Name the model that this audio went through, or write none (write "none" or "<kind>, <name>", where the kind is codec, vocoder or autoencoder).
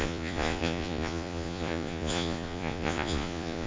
vocoder, Vocos